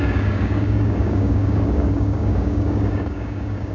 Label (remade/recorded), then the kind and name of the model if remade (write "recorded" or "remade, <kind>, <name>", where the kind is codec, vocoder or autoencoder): remade, codec, DAC